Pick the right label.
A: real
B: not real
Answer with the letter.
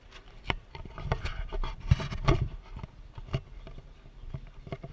A